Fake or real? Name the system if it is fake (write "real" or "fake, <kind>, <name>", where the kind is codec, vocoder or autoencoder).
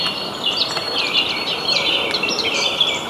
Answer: real